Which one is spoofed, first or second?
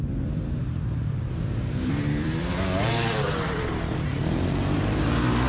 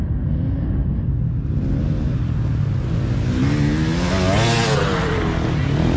first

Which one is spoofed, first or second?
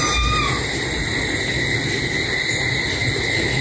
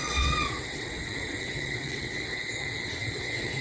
second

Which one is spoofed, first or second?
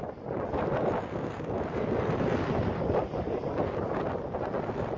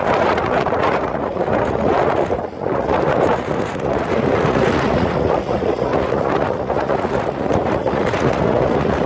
second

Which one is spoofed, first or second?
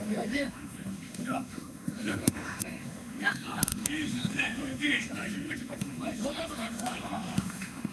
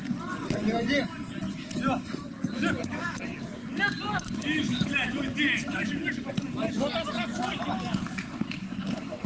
first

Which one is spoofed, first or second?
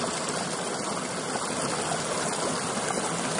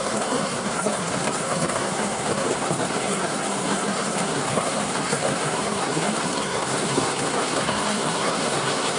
second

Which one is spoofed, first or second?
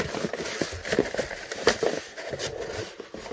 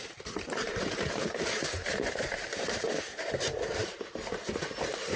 second